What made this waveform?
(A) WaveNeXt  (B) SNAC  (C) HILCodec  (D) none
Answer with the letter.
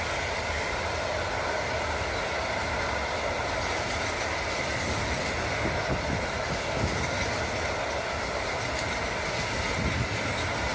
D